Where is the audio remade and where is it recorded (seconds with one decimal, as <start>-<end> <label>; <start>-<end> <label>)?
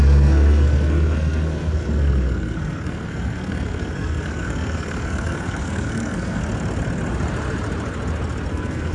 0.0-6.4 remade; 6.4-8.5 recorded; 8.5-8.9 remade